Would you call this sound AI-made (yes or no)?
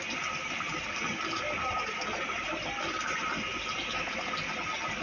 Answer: no